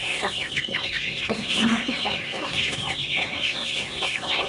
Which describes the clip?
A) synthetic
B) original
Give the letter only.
A